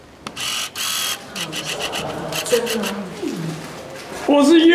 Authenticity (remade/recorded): recorded